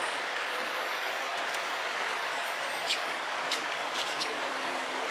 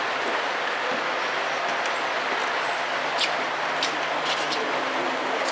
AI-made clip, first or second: first